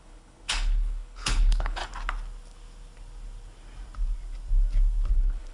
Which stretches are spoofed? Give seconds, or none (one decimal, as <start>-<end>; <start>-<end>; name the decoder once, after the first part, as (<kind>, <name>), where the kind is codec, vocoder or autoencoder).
0.0-1.8 (codec, HILCodec); 5.1-5.5